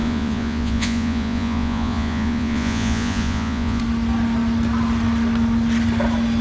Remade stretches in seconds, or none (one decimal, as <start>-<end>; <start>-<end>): 0.0-3.8